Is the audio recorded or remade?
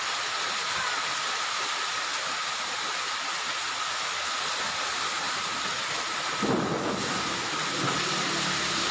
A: recorded